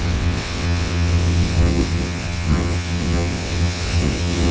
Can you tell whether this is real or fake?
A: fake